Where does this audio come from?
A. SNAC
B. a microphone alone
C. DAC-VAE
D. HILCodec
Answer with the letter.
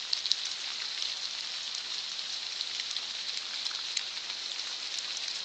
B